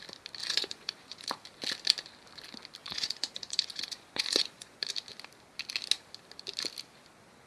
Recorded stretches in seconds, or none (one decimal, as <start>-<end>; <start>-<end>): 0.0-0.4; 1.3-2.8; 4.9-7.5